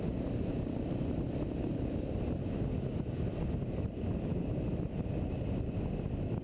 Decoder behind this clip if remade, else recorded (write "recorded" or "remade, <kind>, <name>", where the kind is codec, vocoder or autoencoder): recorded